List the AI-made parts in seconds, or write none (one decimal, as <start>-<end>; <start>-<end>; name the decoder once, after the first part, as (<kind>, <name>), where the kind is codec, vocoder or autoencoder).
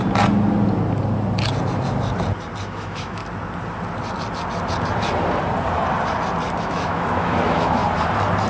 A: 2.6-3.2 (autoencoder, DAC-VAE); 6.6-7.8